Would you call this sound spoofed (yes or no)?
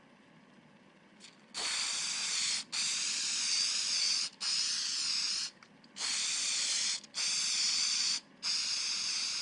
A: no